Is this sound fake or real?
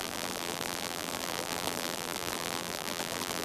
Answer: fake